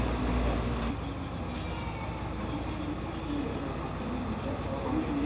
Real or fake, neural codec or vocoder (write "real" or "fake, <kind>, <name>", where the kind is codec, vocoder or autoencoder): real